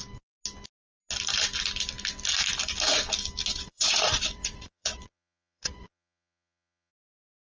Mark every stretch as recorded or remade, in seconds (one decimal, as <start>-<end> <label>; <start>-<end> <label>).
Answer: 0.0-3.5 recorded; 3.5-6.9 remade; 6.9-7.5 recorded